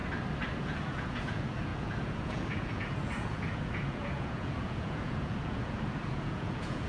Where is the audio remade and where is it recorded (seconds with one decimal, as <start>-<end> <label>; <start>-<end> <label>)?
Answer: 0.0-0.6 recorded; 0.6-6.9 remade